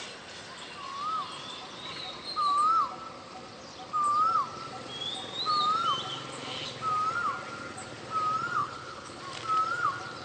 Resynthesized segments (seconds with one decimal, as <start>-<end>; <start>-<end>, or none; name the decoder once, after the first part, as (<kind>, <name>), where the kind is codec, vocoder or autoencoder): 8.6-9.2 (codec, HILCodec)